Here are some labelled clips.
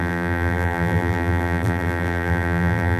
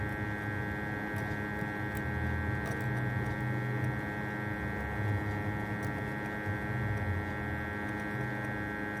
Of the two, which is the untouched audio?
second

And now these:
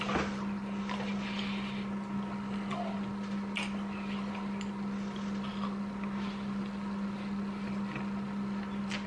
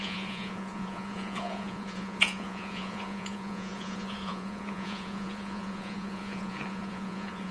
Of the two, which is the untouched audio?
first